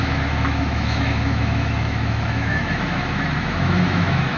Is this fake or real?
fake